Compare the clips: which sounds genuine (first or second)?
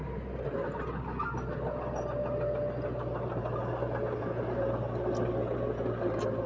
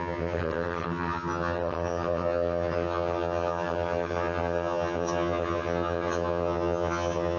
first